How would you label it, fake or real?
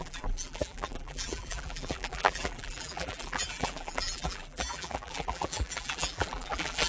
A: fake